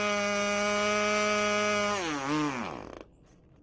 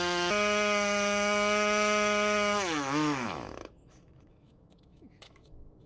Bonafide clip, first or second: first